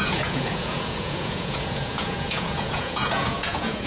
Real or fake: fake